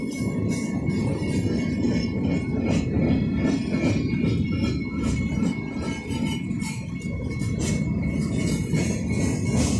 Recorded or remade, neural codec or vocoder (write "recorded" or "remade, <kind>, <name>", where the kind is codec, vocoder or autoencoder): recorded